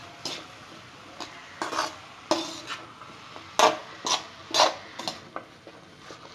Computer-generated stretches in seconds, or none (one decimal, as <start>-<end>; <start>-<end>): none